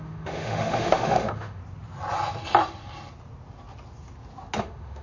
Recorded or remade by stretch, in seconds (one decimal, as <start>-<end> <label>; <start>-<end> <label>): 0.0-1.6 remade; 1.6-4.6 recorded; 4.6-5.0 remade